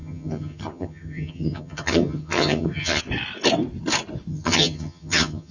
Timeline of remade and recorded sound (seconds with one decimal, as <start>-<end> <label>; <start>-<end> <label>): 0.0-3.0 remade; 3.0-4.3 recorded; 4.3-5.5 remade